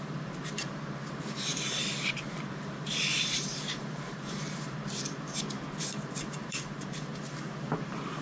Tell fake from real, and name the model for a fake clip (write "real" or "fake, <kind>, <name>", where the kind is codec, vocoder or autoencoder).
fake, vocoder, BigVGAN v2